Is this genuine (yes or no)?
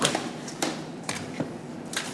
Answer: no